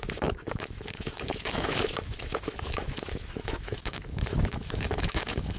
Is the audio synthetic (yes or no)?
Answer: yes